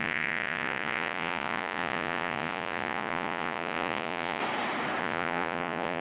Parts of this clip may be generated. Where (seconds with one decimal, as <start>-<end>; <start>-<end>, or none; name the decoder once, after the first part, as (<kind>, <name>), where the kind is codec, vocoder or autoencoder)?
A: 0.0-4.4 (vocoder, Vocos); 5.0-6.0